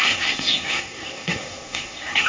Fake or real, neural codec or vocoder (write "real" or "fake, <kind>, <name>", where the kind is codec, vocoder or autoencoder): fake, codec, SNAC